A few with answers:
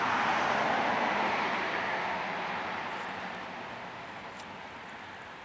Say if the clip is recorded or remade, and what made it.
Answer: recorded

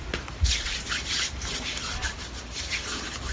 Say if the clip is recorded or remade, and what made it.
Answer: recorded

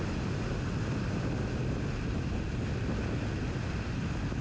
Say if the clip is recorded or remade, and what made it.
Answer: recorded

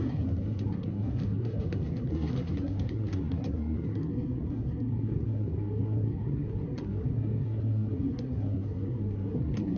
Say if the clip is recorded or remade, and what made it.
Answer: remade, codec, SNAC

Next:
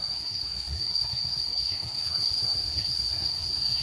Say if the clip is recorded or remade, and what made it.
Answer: remade, codec, SNAC